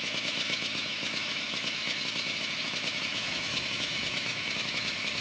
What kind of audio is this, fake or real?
fake